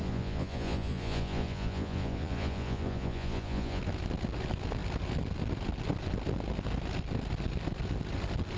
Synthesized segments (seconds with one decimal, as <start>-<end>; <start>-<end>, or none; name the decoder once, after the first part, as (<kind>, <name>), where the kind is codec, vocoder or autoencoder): 0.0-3.8 (vocoder, Vocos)